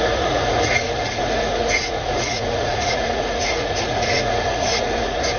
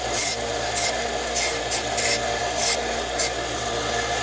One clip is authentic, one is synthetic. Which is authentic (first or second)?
second